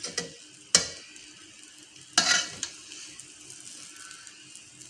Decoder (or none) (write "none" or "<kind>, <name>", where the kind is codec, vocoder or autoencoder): none